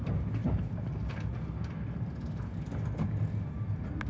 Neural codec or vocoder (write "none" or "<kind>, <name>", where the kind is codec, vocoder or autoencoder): none